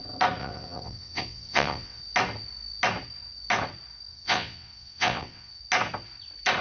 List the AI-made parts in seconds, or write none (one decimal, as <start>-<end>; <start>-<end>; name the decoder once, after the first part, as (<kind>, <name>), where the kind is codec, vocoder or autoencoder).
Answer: 0.4-2.0 (vocoder, WaveNeXt); 4.1-5.6